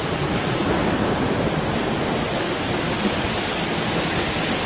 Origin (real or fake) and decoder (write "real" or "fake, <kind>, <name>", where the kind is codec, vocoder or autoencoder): real